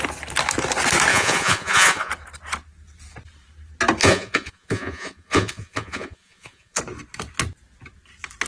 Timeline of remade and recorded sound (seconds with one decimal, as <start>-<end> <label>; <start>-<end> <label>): 0.0-1.1 recorded; 1.1-2.1 remade; 2.1-4.0 recorded; 4.0-6.8 remade; 6.8-8.5 recorded